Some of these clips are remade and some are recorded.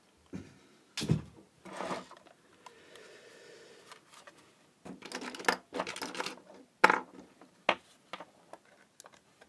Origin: recorded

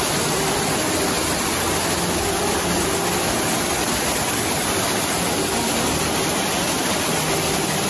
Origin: remade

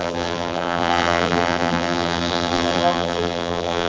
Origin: remade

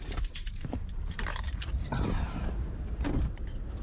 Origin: remade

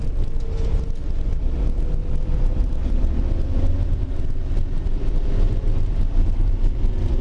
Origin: remade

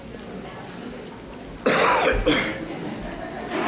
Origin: recorded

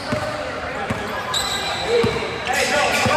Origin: remade